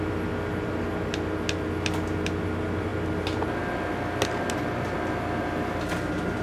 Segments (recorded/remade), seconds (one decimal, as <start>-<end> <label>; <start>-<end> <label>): 0.0-6.4 recorded